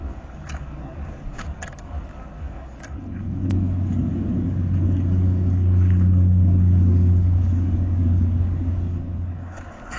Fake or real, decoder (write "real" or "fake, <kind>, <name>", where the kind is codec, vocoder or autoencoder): fake, codec, DAC